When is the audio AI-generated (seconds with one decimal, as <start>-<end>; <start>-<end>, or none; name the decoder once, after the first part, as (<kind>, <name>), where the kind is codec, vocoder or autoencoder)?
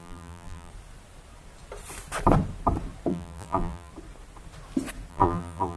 0.0-0.7 (vocoder, BigVGAN v2); 3.1-3.9; 5.1-5.8